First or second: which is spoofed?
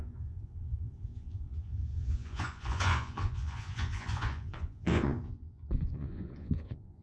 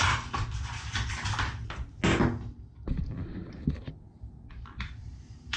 first